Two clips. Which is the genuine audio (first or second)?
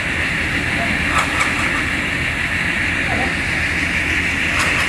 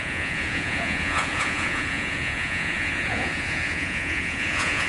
first